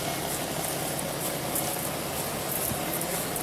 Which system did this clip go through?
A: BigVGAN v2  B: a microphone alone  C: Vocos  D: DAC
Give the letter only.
B